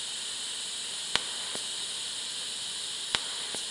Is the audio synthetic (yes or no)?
no